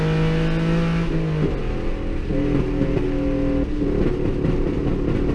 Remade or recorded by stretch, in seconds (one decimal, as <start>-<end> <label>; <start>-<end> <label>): 0.0-5.3 recorded